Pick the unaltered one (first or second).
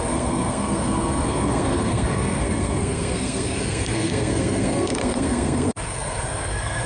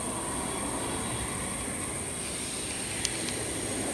second